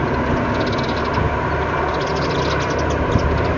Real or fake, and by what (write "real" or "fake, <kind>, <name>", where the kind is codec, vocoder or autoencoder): real